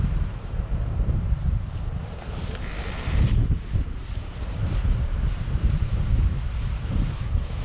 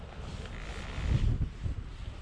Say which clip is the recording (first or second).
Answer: second